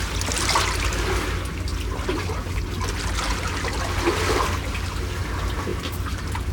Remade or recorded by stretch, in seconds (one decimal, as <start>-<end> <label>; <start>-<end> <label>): 0.0-5.7 recorded; 5.7-6.5 remade